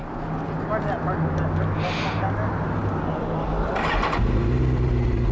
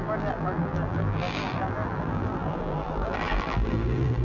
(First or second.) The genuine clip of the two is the first